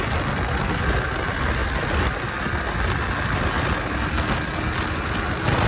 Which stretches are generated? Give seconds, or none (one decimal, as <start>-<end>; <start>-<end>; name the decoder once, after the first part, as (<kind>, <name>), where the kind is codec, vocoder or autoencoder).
none